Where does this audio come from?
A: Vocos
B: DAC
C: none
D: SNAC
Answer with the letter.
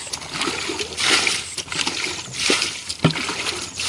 C